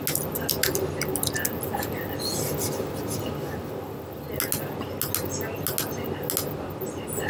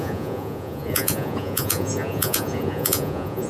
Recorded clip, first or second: first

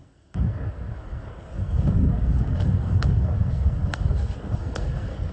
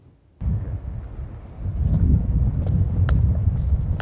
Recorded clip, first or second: second